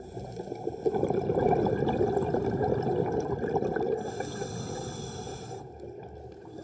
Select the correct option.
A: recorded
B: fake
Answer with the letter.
A